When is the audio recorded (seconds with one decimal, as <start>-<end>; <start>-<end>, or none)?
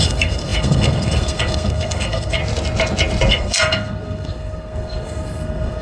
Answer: 2.4-3.3